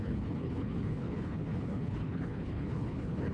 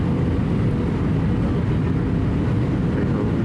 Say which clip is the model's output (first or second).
first